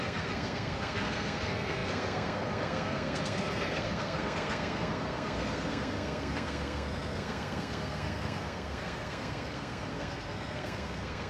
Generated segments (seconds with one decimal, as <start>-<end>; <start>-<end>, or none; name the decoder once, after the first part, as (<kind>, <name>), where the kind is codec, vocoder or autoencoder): 0.0-11.3 (codec, SNAC)